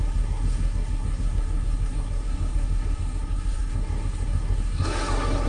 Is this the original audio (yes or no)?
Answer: no